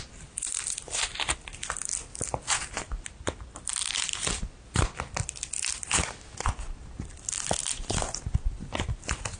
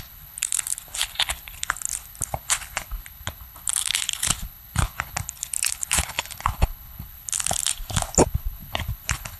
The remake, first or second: second